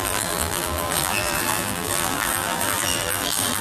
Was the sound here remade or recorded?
remade